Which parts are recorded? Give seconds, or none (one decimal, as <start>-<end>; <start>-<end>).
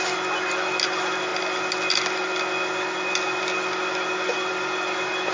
0.0-5.3